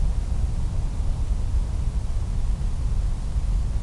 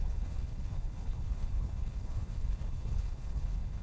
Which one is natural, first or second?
first